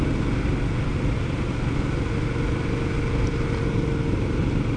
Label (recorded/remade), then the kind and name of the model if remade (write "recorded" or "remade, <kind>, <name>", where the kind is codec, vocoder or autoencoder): recorded